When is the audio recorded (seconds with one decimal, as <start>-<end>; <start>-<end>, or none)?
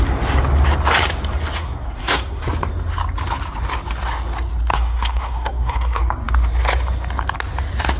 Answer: 0.0-1.6; 2.4-4.7; 6.0-8.0